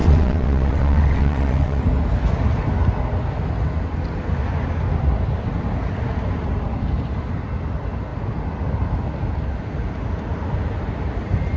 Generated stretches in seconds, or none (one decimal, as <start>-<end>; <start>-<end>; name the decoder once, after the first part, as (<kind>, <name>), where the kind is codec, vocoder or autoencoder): 0.0-1.8 (vocoder, WaveNeXt)